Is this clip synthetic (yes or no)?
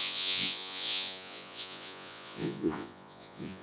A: yes